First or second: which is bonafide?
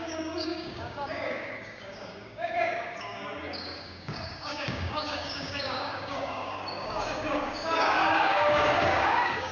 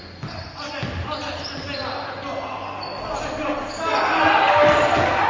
second